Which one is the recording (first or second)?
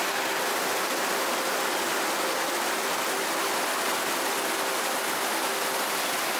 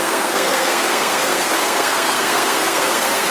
first